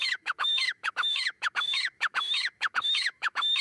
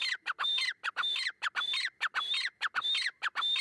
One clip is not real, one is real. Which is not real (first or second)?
first